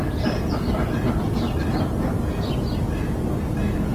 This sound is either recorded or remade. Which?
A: recorded